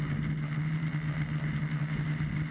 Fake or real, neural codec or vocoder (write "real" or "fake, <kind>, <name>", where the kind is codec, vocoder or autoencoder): real